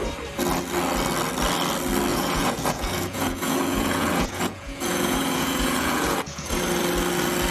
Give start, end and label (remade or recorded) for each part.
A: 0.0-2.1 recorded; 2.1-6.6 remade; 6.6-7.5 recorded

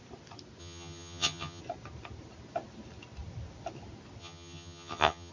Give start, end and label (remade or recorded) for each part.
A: 0.0-0.6 recorded; 0.6-1.6 remade; 1.6-4.2 recorded; 4.2-5.3 remade

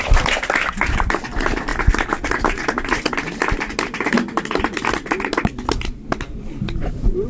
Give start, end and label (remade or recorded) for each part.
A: 0.0-7.3 recorded

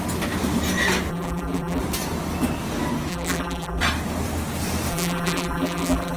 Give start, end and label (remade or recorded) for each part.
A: 0.0-1.1 recorded; 1.1-1.8 remade; 1.8-3.1 recorded; 3.1-3.8 remade; 3.8-4.9 recorded; 4.9-6.2 remade

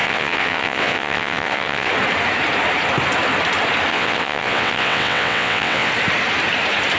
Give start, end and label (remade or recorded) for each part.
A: 0.0-1.9 remade; 1.9-3.9 recorded; 3.9-5.9 remade; 5.9-7.0 recorded